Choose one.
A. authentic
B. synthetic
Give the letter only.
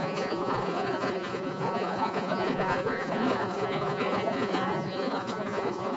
B